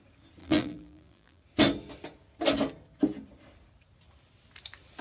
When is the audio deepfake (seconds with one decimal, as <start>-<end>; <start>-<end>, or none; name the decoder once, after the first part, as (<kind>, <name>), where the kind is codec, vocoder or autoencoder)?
0.4-1.4 (vocoder, BigVGAN v2)